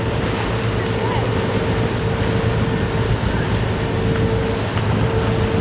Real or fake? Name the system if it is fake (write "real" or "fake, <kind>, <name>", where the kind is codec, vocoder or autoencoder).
real